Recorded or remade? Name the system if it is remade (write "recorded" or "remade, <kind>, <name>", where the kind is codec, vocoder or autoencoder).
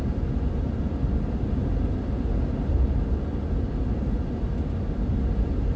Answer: recorded